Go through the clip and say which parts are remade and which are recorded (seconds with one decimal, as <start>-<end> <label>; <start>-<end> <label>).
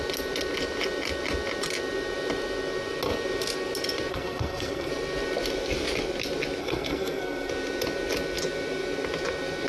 0.0-4.1 recorded; 4.1-4.9 remade; 4.9-6.6 recorded; 6.6-7.5 remade; 7.5-9.7 recorded